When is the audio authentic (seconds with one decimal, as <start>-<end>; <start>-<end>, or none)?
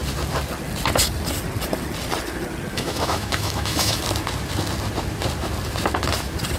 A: 0.0-2.7; 4.0-6.6